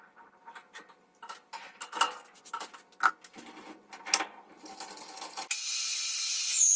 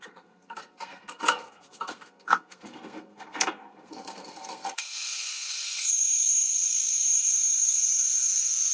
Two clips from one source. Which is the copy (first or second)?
second